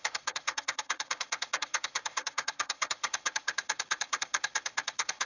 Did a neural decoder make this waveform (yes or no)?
yes